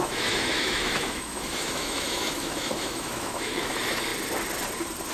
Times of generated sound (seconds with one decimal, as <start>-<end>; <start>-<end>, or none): 0.0-4.1